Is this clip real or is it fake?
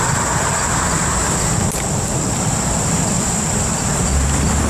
fake